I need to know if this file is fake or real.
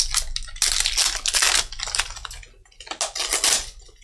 real